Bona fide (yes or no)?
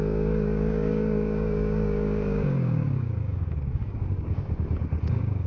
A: no